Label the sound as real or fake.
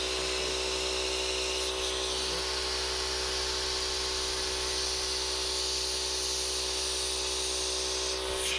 real